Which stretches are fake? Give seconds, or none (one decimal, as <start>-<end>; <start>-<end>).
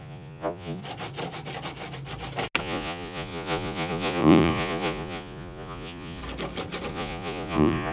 0.0-0.8; 2.6-6.2; 6.9-7.9